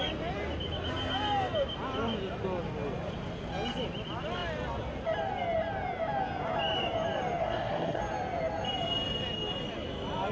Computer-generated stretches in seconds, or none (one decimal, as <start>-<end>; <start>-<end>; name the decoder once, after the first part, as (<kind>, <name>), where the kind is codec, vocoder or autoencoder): 7.4-8.0 (codec, SNAC)

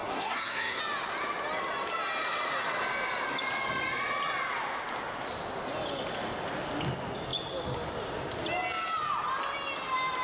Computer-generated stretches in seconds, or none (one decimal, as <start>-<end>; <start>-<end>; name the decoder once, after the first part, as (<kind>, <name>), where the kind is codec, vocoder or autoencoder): 0.0-0.8 (codec, SNAC)

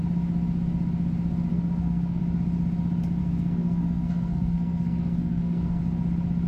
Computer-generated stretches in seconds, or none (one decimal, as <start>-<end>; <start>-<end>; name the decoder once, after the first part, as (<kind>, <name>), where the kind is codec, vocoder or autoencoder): 1.5-2.2 (codec, SNAC); 3.2-5.8

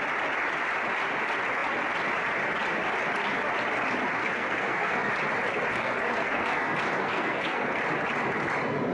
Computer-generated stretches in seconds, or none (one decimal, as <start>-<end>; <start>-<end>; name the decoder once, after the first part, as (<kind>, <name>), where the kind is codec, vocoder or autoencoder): 4.2-5.1 (codec, SNAC); 5.7-7.8

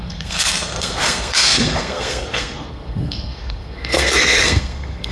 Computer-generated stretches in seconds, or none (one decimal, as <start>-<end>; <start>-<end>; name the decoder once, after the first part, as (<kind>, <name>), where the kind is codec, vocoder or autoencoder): 0.0-5.1 (codec, SNAC)

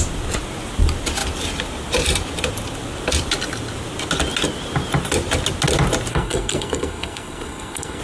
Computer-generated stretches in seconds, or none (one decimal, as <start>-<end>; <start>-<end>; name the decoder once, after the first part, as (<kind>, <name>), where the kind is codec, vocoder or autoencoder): 6.1-8.0 (codec, SNAC)